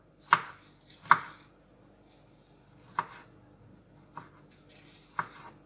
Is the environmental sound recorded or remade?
recorded